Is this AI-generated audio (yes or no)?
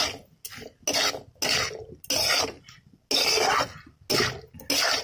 no